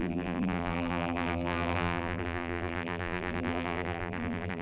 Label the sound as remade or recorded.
remade